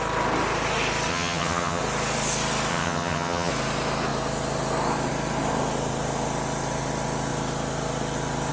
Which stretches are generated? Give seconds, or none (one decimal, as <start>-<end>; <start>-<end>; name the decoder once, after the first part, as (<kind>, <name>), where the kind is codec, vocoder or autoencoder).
1.1-1.8 (vocoder, HiFi-GAN); 2.7-3.5